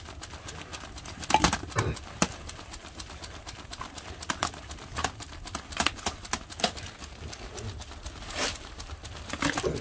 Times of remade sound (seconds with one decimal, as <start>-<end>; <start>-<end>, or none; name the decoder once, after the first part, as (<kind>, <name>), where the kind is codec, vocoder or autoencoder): none